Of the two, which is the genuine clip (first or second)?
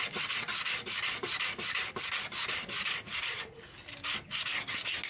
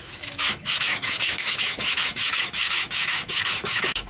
first